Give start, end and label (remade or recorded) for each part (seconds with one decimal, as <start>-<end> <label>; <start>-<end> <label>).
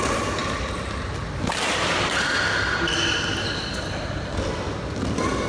0.0-5.5 recorded